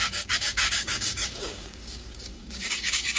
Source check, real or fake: fake